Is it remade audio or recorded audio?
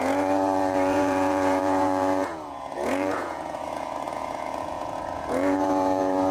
remade